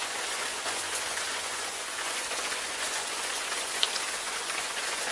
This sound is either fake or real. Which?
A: fake